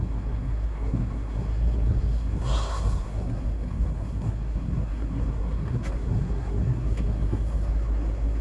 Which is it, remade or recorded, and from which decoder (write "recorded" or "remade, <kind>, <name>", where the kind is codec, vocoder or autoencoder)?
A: remade, codec, SNAC